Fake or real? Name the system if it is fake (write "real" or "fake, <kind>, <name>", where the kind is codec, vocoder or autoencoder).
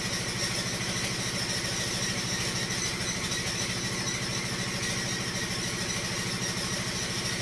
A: real